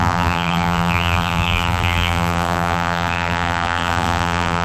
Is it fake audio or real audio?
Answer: fake